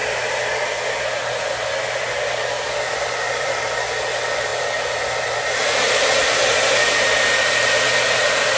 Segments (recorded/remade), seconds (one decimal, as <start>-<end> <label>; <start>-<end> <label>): 0.0-2.9 recorded; 2.9-8.6 remade